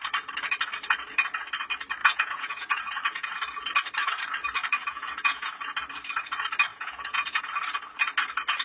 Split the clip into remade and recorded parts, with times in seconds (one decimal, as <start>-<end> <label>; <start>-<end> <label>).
0.0-2.0 recorded; 2.0-2.8 remade; 2.8-4.8 recorded; 4.8-5.5 remade; 5.5-6.7 recorded; 6.7-7.4 remade; 7.4-8.6 recorded